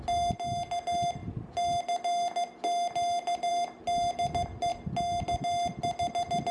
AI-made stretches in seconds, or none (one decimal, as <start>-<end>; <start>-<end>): none